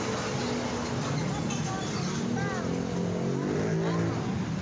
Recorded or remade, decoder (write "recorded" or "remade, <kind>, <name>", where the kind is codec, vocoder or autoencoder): recorded